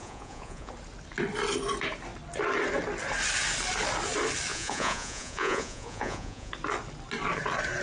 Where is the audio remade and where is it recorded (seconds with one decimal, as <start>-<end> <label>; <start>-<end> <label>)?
0.0-0.7 remade; 0.7-4.5 recorded; 4.5-6.5 remade; 6.5-7.8 recorded